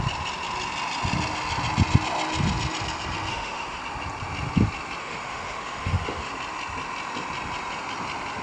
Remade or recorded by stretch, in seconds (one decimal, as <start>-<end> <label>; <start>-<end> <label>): 0.0-3.3 recorded; 3.3-3.8 remade; 3.8-5.0 recorded; 5.0-6.3 remade; 6.3-8.4 recorded